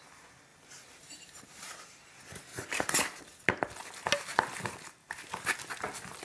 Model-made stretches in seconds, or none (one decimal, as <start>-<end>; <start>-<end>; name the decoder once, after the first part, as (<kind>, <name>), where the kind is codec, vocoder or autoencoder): 0.5-1.7 (vocoder, BigVGAN v2); 2.5-3.2; 5.0-5.6